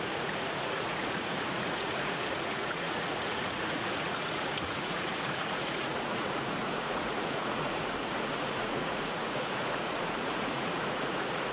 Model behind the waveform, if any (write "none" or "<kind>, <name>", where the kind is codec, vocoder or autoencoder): vocoder, Vocos